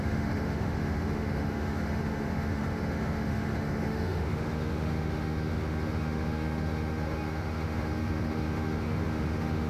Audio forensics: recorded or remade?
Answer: remade